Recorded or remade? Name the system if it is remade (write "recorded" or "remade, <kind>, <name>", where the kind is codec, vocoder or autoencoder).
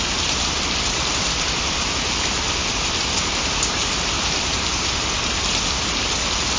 recorded